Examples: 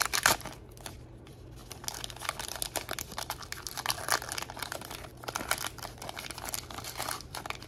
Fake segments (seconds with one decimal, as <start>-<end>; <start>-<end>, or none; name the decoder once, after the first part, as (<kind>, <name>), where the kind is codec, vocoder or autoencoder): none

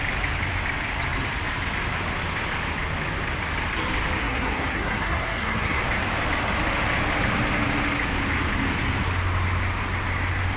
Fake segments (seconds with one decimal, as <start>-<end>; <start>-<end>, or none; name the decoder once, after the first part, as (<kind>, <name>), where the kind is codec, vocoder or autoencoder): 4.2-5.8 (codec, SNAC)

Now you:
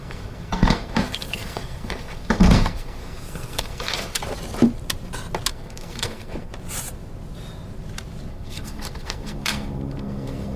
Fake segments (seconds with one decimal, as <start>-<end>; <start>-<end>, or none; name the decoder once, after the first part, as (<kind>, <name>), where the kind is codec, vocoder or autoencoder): 0.0-4.2 (codec, SNAC); 5.5-6.5; 8.3-10.6